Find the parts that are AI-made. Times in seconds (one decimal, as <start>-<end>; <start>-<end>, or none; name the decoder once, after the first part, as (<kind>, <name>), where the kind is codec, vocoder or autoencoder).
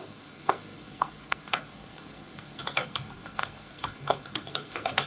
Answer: 0.0-5.1 (codec, SNAC)